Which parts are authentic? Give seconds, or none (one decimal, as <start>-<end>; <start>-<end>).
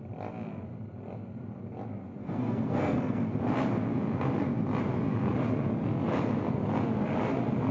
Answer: 0.0-2.2; 3.3-7.7